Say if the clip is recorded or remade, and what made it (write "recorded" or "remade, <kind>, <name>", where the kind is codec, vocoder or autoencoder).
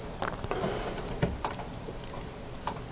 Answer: remade, vocoder, BigVGAN v2